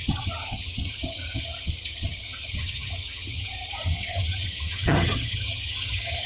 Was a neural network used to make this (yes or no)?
yes